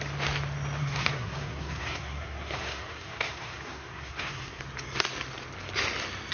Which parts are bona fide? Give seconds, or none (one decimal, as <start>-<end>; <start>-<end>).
0.0-0.8; 4.6-6.3